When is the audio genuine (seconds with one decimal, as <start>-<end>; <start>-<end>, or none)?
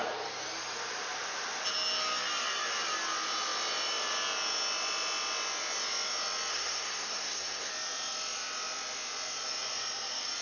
0.0-6.5; 7.7-10.4